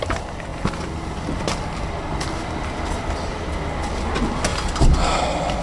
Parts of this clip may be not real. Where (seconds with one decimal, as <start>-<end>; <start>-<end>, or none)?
none